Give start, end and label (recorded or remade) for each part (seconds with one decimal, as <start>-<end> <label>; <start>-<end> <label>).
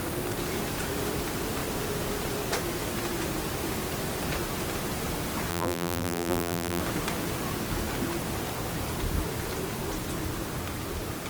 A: 0.0-5.5 recorded; 5.5-6.8 remade; 6.8-11.3 recorded